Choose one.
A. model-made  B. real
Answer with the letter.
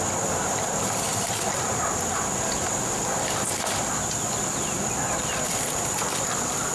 A